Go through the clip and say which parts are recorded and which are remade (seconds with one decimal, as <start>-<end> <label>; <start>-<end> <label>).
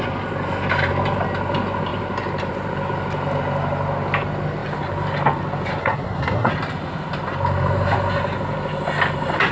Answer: 0.0-5.8 recorded; 5.8-6.5 remade; 6.5-9.5 recorded